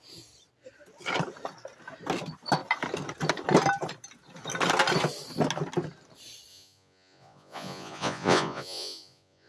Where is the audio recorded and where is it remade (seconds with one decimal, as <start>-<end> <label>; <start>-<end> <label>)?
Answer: 0.0-6.5 recorded; 6.5-9.5 remade